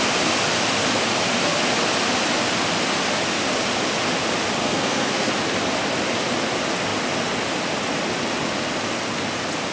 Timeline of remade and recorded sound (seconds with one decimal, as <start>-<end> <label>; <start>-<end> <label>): 0.0-4.6 recorded; 4.6-5.3 remade; 5.3-9.7 recorded